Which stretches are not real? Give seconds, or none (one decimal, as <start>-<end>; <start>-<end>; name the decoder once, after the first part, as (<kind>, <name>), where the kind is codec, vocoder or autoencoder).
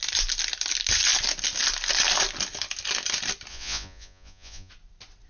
3.5-4.7 (vocoder, Vocos)